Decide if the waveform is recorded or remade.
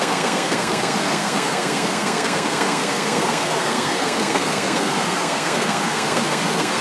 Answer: remade